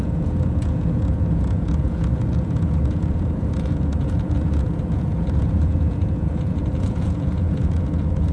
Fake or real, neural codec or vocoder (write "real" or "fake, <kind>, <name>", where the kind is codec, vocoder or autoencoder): fake, vocoder, Vocos